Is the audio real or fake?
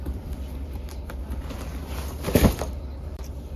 fake